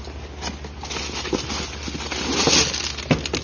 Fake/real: real